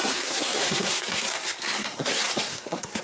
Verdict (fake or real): fake